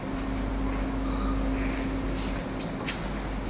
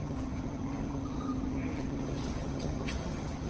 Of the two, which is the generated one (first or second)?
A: second